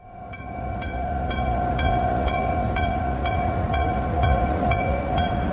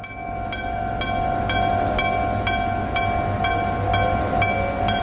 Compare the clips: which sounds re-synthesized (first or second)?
first